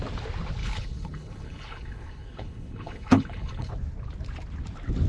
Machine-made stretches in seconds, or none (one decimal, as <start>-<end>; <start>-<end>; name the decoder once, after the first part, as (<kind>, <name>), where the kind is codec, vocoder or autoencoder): 0.6-3.7 (codec, HILCodec)